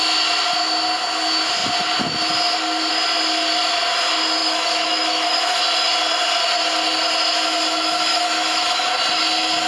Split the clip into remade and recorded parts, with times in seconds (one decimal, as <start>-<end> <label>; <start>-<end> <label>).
0.0-4.4 recorded; 4.4-5.6 remade; 5.6-8.1 recorded; 8.1-8.9 remade; 8.9-9.7 recorded